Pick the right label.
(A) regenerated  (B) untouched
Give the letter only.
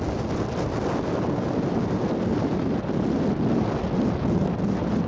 B